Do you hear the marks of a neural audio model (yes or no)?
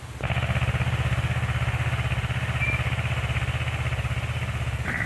no